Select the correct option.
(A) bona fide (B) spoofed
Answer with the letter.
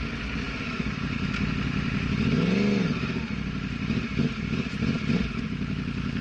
A